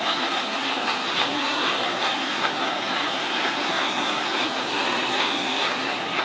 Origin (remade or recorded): remade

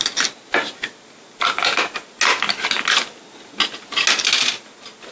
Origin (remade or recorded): recorded